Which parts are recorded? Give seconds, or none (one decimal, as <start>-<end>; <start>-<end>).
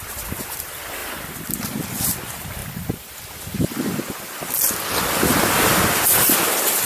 0.0-1.0; 1.8-6.8